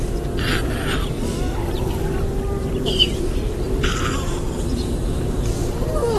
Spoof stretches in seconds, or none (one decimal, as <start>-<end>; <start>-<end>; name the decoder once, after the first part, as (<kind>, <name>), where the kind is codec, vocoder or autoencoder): 2.6-5.5 (vocoder, BigVGAN v2)